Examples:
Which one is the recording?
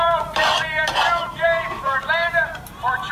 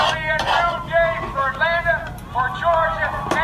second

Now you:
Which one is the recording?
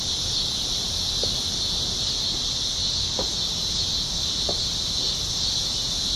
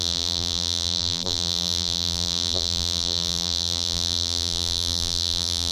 first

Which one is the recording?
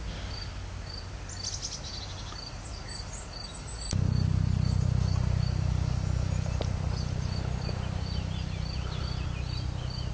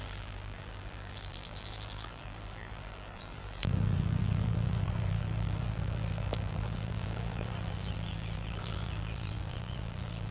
first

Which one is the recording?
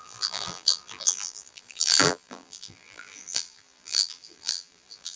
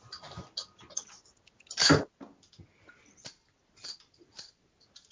second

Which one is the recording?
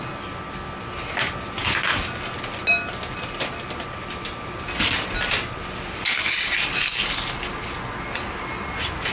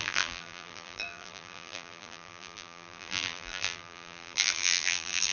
first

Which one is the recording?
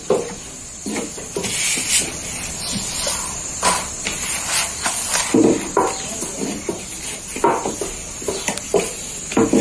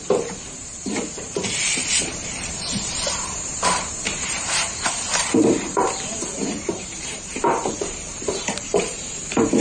first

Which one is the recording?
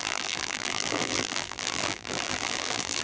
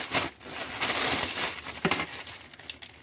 second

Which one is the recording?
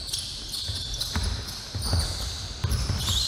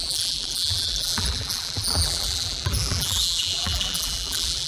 first